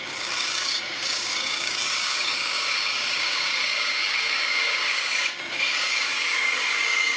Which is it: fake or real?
fake